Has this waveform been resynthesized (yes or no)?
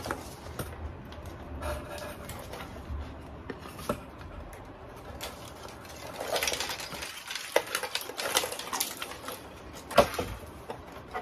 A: no